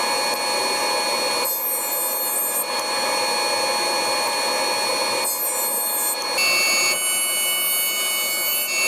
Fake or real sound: real